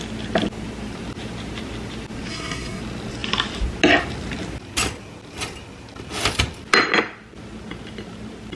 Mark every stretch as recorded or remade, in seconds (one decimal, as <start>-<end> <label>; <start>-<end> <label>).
0.0-2.3 recorded; 2.3-2.8 remade; 2.8-8.6 recorded